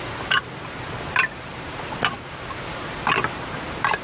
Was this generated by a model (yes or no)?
no